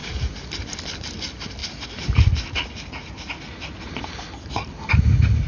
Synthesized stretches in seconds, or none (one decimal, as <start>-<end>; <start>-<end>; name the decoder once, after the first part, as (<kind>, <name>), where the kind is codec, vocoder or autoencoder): 1.0-1.6 (vocoder, BigVGAN v2); 4.9-5.5